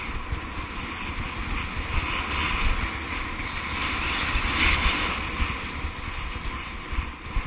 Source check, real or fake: real